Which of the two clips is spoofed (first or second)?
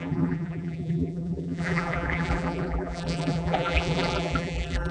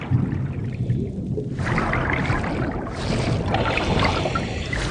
first